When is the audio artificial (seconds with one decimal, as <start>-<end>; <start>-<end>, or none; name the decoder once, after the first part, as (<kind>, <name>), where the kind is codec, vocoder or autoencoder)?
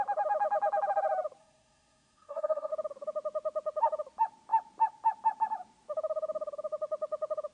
1.4-2.7 (codec, SNAC)